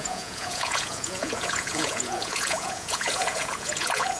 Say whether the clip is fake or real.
fake